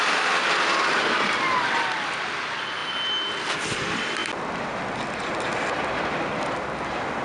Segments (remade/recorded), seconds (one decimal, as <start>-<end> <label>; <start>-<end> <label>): 0.0-7.2 recorded